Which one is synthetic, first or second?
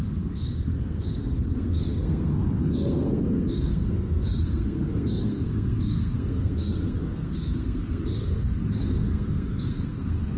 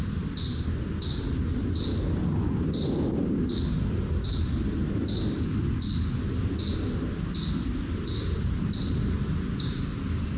first